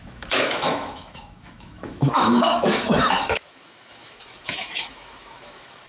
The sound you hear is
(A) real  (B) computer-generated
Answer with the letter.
B